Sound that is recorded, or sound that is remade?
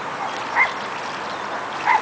recorded